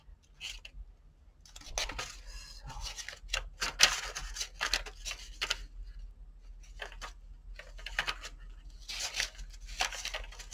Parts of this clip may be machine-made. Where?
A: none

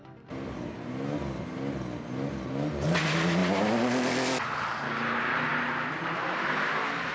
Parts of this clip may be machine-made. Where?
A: none